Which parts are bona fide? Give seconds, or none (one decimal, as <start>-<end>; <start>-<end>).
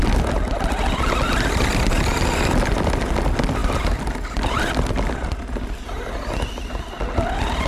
0.0-7.7